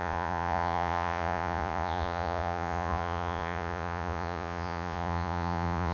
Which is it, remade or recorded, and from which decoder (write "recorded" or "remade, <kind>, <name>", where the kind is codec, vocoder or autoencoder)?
remade, vocoder, Vocos